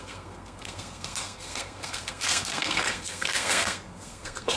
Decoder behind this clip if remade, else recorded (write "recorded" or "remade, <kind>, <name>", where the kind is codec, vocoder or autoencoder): remade, codec, SNAC